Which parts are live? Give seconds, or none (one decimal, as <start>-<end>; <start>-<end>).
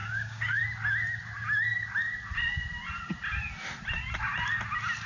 0.6-5.1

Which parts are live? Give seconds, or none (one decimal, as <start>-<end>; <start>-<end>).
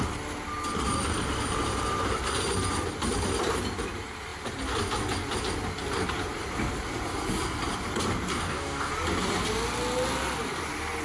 0.0-8.3; 8.9-11.0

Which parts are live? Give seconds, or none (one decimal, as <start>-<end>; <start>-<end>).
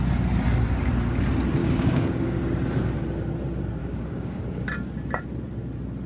0.0-1.6; 2.4-3.8; 4.4-6.1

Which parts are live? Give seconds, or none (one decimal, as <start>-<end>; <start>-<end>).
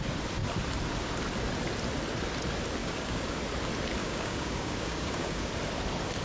0.0-2.8; 3.4-4.0; 5.5-6.2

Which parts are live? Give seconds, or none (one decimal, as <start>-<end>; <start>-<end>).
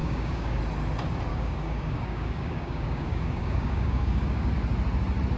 0.6-1.3; 4.5-5.4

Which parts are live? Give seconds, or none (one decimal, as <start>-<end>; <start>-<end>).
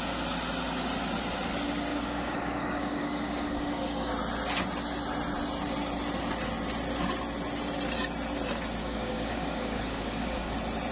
0.0-1.9; 4.1-8.8; 10.5-10.9